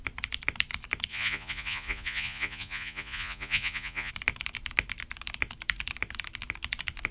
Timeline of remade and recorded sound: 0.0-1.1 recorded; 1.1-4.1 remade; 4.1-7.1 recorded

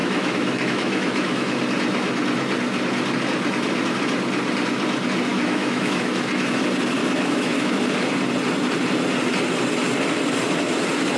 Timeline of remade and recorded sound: 0.0-1.6 remade; 1.6-5.3 recorded; 5.3-6.3 remade; 6.3-7.0 recorded; 7.0-7.8 remade; 7.8-11.2 recorded